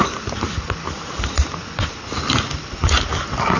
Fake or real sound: real